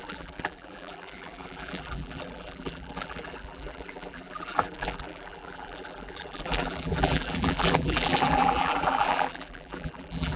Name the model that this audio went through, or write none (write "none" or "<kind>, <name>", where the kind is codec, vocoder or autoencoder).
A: vocoder, BigVGAN v2